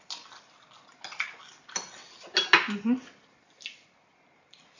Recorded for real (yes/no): yes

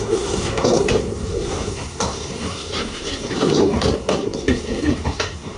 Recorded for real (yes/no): no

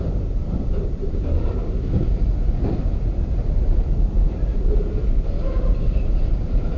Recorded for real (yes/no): yes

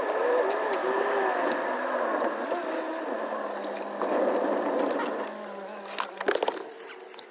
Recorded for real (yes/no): yes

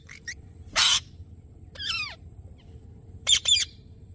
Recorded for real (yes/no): no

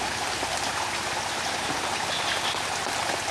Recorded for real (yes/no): yes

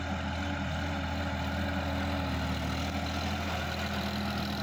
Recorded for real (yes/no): yes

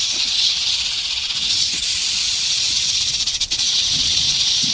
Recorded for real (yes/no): no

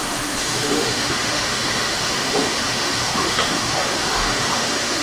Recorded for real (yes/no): no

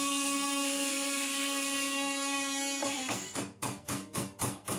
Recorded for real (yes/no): no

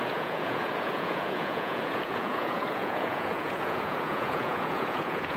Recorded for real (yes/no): no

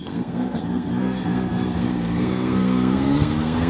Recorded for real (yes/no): no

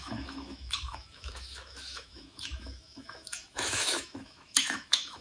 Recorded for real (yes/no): no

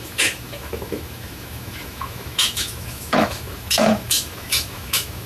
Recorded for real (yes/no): no